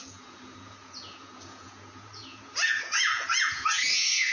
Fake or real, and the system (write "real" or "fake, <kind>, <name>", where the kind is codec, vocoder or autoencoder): fake, vocoder, Vocos